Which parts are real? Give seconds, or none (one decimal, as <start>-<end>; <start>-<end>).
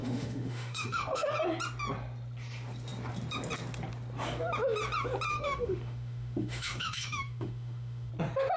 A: 1.3-5.3; 8.1-8.6